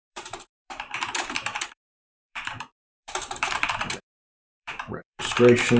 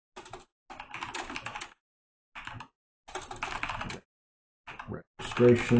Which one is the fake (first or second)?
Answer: first